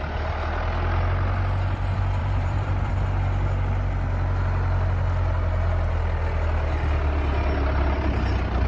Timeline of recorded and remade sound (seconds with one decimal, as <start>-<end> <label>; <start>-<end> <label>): 0.0-2.2 recorded; 2.2-2.9 remade; 2.9-8.7 recorded